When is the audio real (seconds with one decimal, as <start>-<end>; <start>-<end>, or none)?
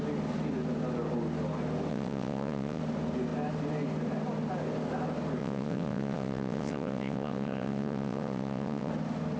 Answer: 0.0-1.9; 2.8-5.4; 8.9-9.4